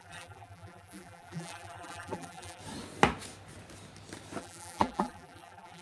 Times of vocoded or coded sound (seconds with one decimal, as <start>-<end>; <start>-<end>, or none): 0.0-2.6; 4.4-5.8

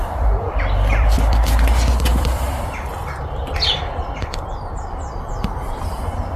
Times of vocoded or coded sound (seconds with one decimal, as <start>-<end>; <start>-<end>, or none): 0.0-1.5; 2.1-5.3

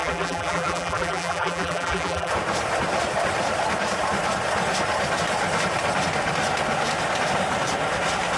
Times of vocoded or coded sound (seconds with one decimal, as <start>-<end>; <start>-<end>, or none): 0.0-2.3

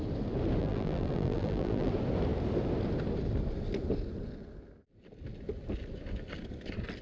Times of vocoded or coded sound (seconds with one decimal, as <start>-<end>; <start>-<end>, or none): 0.6-1.9

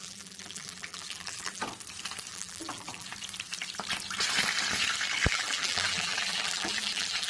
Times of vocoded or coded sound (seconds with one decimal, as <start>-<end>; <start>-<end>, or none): 0.0-1.6; 2.3-3.1; 5.3-7.3

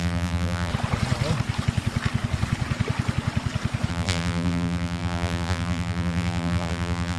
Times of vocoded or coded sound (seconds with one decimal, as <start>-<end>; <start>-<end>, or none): 0.0-0.7; 3.9-7.2